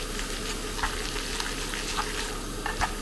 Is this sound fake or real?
real